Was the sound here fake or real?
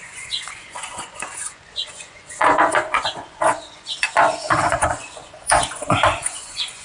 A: fake